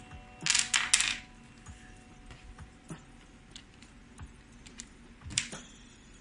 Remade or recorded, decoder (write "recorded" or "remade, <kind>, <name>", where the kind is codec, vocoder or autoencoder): recorded